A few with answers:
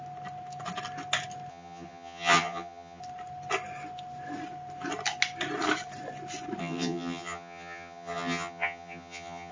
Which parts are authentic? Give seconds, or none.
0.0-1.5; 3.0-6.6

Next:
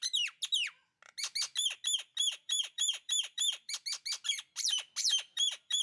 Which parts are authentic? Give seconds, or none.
0.0-2.2; 3.7-5.0

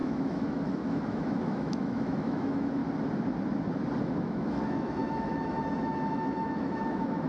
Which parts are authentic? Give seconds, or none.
2.8-4.0